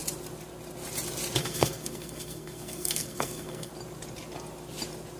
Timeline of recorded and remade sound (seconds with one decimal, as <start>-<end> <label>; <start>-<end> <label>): 0.0-1.4 recorded; 1.4-3.7 remade; 3.7-5.2 recorded